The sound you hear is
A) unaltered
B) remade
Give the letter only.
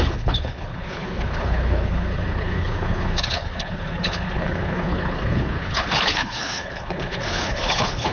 B